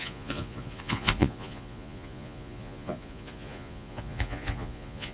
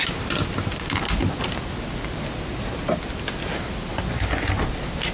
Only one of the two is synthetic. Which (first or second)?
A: first